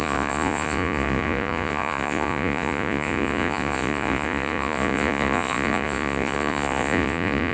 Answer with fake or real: fake